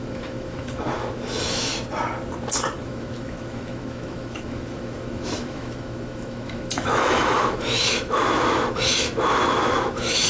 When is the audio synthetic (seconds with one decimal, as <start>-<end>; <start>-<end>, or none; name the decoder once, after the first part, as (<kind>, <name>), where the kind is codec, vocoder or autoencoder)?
0.0-1.7 (autoencoder, DAC-VAE); 2.8-10.3